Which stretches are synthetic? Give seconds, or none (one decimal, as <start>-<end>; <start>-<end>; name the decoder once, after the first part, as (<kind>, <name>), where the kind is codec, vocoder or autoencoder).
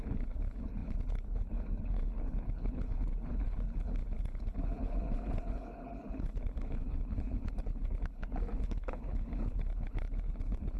0.0-10.8 (codec, HILCodec)